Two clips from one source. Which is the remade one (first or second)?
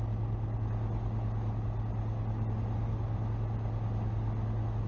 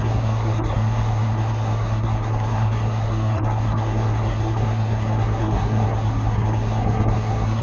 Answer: second